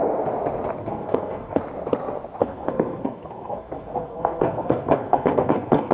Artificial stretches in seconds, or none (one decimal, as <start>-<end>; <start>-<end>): 0.8-1.6; 2.4-5.9